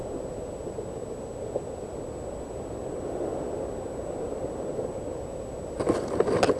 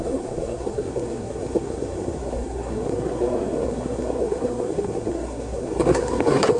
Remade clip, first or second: second